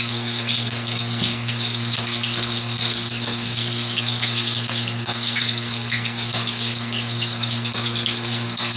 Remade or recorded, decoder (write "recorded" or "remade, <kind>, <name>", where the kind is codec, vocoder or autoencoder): remade, codec, SNAC